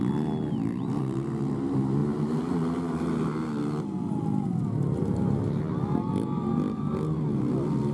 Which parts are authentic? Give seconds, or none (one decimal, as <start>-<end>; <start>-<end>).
0.0-7.9